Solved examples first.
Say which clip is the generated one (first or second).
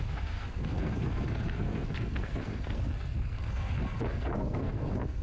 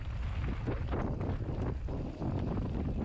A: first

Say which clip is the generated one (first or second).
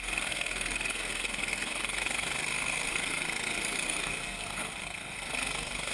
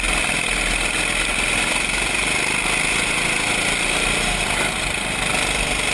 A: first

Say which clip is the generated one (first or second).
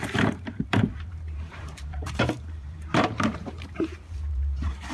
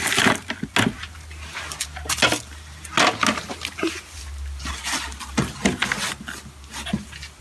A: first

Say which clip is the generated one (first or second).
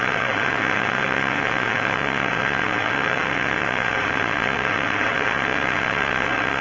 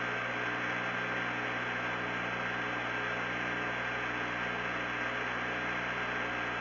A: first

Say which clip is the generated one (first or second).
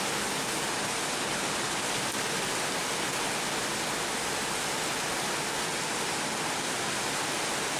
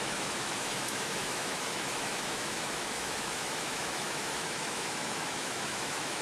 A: second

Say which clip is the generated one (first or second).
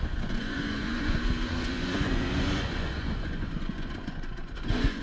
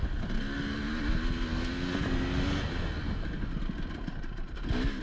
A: first